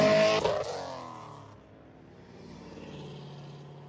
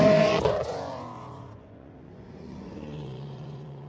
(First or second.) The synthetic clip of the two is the second